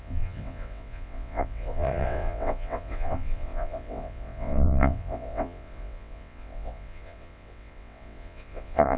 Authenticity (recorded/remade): remade